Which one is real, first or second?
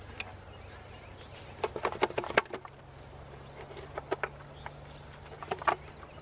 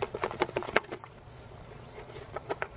first